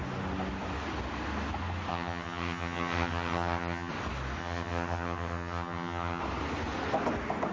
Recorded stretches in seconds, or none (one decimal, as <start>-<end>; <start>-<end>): 0.0-1.9; 3.9-4.4; 6.2-7.5